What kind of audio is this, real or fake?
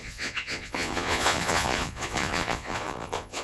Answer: fake